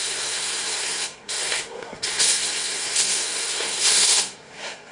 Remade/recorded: remade